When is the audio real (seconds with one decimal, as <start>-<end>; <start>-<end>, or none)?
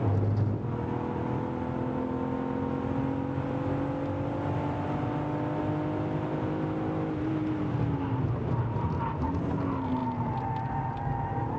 0.0-11.6